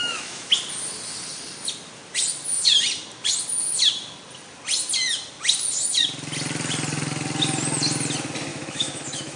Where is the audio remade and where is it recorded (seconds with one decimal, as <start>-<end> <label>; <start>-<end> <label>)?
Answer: 0.0-0.5 remade; 0.5-8.5 recorded; 8.5-9.4 remade